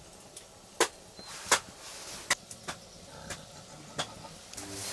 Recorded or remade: recorded